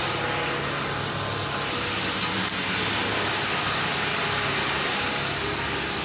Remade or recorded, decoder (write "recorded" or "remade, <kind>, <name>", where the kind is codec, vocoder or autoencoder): recorded